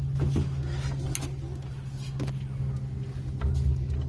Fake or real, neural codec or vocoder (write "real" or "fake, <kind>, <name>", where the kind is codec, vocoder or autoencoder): real